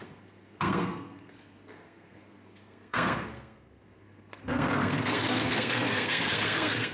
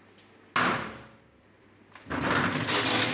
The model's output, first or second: first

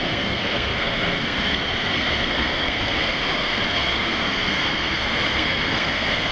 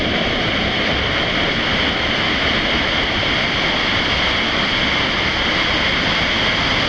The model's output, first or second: first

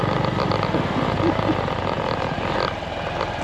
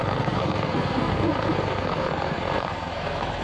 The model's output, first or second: second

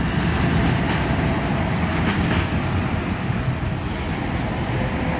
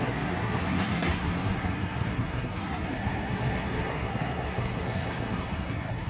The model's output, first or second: second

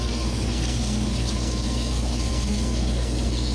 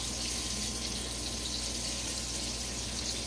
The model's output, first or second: first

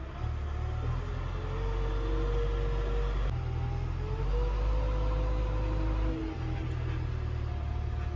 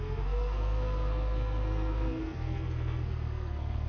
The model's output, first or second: second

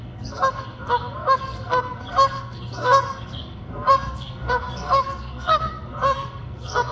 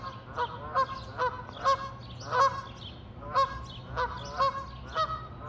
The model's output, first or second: first